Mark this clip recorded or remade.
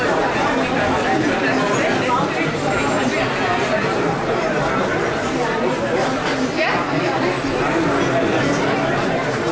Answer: recorded